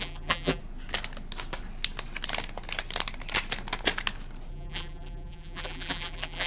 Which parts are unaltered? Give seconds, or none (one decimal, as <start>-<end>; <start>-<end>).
0.6-4.5